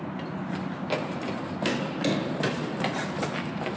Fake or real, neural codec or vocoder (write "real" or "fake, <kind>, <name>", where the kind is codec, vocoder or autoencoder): real